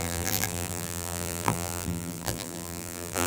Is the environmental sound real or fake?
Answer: fake